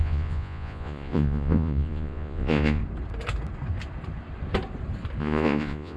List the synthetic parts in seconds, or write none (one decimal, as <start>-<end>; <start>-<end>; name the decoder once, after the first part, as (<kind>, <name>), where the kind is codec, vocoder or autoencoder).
0.0-2.8 (vocoder, Vocos); 5.2-6.0